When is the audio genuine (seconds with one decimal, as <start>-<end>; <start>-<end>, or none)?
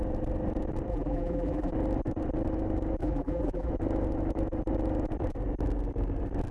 0.0-0.9; 1.7-3.0; 3.7-6.5